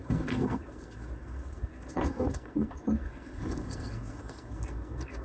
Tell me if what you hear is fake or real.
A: fake